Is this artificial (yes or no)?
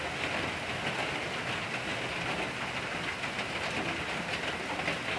no